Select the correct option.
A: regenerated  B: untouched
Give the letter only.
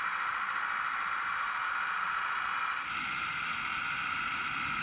B